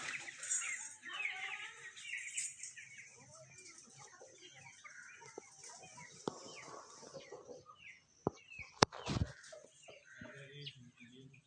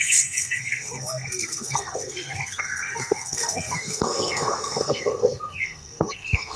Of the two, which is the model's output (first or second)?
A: second